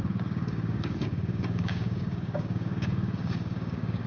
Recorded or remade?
remade